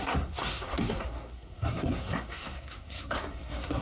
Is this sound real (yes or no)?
no